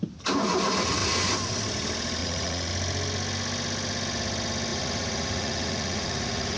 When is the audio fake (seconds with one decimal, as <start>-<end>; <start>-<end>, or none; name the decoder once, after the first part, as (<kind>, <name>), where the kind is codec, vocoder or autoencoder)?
2.2-2.7 (vocoder, Vocos); 4.7-6.6